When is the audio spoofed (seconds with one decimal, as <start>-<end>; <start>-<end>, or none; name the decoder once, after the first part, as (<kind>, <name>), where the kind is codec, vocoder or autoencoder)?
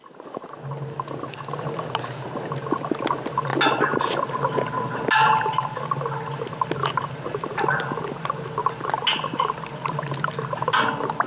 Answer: none